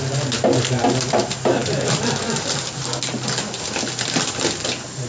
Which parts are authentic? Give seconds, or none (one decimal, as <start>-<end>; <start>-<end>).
0.0-5.1